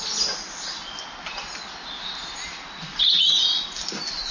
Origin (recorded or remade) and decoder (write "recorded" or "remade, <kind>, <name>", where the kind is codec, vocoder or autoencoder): recorded